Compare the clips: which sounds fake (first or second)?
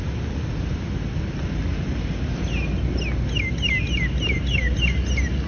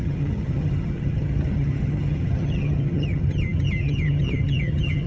second